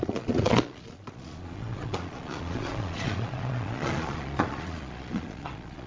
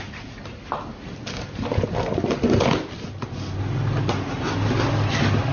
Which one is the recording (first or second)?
second